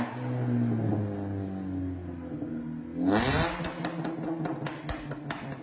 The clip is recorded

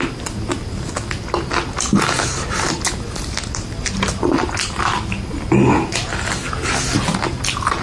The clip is recorded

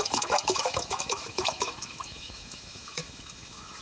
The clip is remade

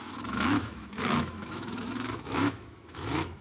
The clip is remade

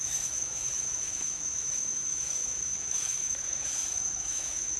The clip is remade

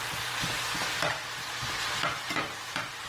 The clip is recorded